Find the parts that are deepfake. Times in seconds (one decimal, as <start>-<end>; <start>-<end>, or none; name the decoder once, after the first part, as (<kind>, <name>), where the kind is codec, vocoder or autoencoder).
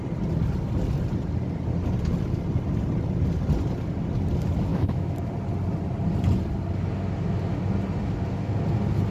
4.7-5.3 (autoencoder, DAC-VAE)